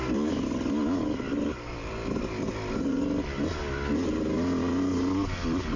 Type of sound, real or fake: real